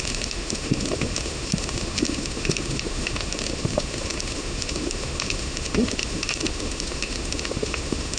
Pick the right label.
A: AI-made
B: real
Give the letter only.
A